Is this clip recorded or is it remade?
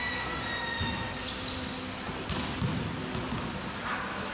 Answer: recorded